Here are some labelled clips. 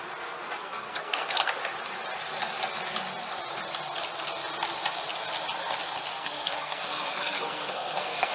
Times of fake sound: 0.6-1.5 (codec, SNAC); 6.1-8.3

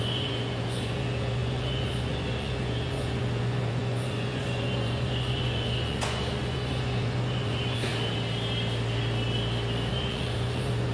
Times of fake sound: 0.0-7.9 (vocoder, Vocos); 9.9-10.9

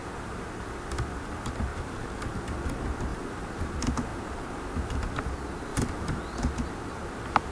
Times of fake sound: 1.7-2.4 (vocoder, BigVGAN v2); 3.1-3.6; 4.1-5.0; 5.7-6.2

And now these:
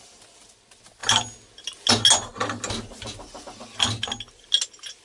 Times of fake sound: none